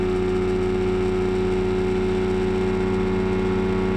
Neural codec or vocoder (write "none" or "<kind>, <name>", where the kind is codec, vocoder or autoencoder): none